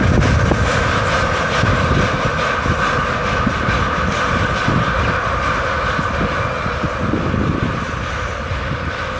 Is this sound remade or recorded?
recorded